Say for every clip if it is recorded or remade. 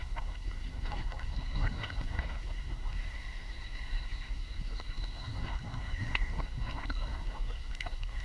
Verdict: remade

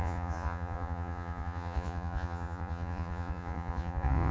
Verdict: remade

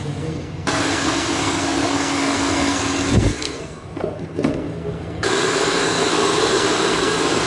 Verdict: remade